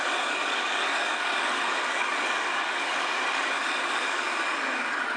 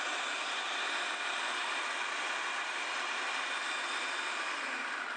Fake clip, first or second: first